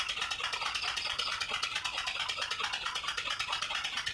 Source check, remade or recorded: remade